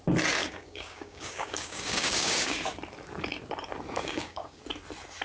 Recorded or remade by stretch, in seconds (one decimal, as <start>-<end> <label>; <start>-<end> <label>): 0.0-0.4 recorded; 0.4-2.6 remade; 2.6-4.0 recorded; 4.0-4.6 remade; 4.6-5.2 recorded